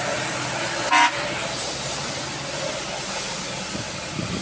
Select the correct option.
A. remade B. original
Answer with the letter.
B